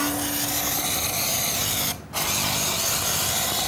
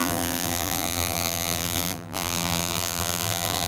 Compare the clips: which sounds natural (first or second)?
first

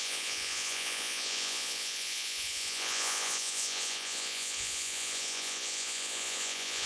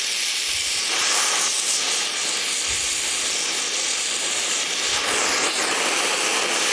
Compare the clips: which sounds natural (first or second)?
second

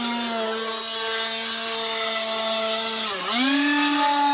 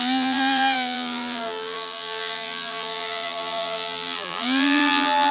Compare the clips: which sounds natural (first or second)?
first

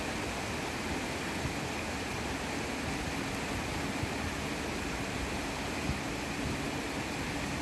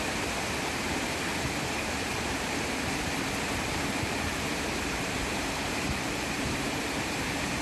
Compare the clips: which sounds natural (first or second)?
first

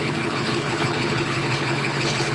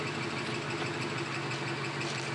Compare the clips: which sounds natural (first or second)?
second